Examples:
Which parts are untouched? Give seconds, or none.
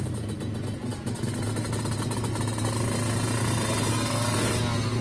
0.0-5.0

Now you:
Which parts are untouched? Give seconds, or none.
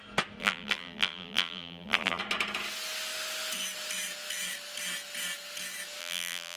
0.0-0.4; 2.2-6.0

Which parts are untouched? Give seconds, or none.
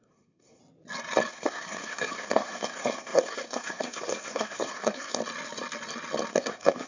0.6-1.3; 5.2-6.3